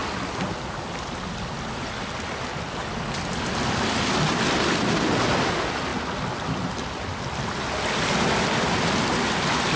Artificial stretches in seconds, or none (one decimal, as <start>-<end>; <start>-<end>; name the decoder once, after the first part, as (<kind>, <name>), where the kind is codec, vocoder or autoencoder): none